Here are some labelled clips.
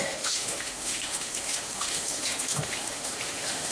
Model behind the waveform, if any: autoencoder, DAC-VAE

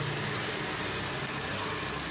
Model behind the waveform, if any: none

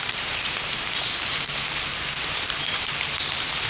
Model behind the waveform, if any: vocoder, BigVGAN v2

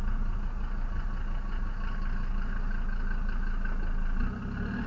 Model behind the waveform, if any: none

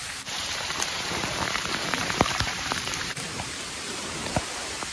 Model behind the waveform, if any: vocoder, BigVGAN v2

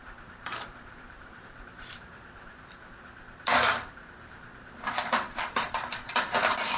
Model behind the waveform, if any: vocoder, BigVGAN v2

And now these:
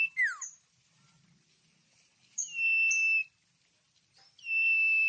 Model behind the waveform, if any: none